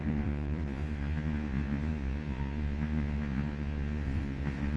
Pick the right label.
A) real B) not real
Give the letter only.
B